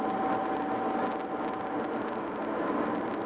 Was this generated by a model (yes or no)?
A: no